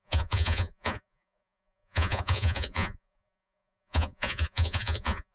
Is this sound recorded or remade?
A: remade